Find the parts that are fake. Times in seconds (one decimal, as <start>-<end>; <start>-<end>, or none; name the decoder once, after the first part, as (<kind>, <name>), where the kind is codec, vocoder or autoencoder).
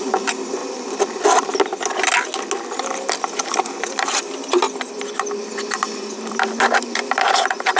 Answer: 0.0-0.6 (vocoder, BigVGAN v2); 3.5-7.8